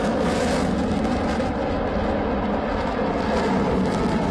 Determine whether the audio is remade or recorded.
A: recorded